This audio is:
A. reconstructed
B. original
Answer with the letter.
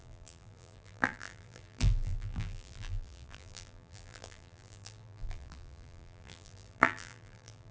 A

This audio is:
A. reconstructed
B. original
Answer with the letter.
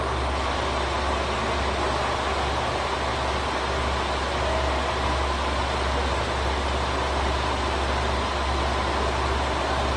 B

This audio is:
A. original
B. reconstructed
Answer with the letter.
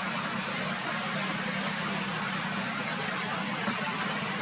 A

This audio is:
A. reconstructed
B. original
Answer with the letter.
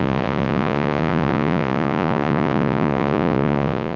A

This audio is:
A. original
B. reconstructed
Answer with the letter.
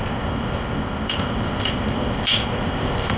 B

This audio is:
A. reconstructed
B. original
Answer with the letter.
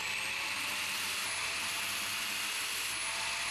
B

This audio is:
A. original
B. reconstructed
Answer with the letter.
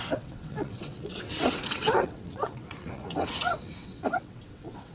B